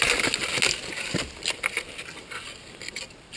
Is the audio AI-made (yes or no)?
no